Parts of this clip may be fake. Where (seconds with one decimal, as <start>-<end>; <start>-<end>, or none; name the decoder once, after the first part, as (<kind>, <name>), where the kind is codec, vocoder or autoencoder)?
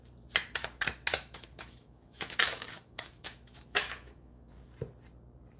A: 1.1-4.5 (autoencoder, DAC-VAE)